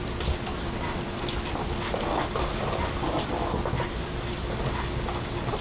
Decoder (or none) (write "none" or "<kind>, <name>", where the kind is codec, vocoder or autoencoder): none